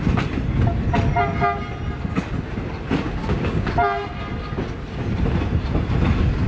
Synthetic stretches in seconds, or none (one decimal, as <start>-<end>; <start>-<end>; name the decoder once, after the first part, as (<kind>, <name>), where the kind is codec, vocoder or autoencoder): 3.2-3.7 (codec, DAC)